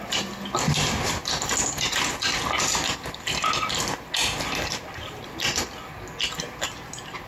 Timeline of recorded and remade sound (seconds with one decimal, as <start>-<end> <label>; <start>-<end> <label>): 0.0-7.3 recorded